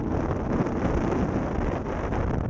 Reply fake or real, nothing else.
real